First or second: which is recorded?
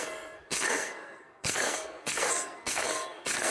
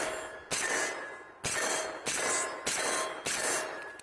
second